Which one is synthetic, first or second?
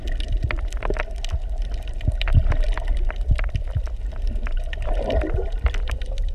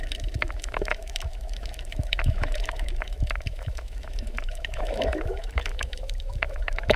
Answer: second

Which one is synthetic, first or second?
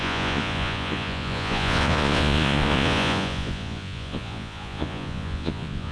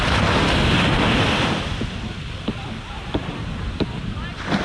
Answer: first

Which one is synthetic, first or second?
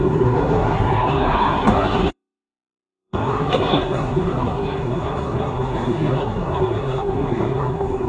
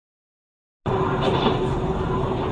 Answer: first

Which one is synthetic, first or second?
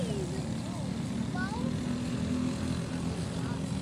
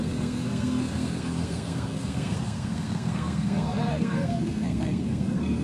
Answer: second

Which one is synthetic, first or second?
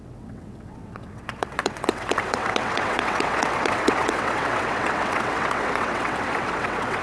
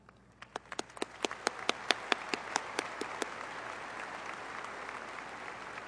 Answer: first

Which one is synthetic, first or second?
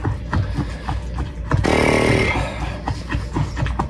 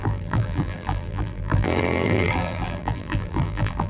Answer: second